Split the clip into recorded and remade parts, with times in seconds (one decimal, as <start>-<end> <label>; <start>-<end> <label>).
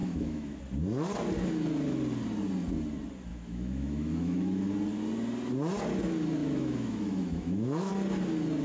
0.0-0.6 remade; 0.6-3.3 recorded; 3.3-4.7 remade; 4.7-6.4 recorded; 6.4-7.9 remade; 7.9-8.6 recorded